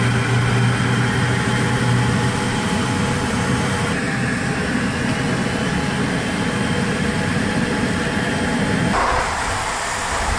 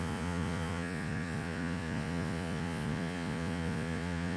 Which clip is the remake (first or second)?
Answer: second